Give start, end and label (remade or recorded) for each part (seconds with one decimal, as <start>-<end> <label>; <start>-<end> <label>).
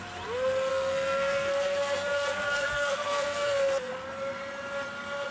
0.0-0.7 recorded; 0.7-3.9 remade; 3.9-5.3 recorded